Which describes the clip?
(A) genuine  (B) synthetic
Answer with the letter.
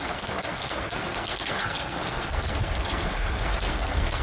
B